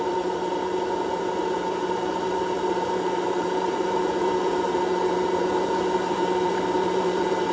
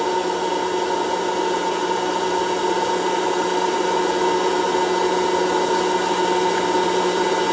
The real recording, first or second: second